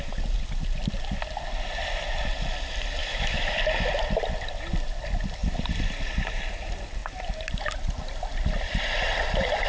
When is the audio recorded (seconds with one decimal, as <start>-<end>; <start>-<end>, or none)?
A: 0.0-3.0; 3.6-9.7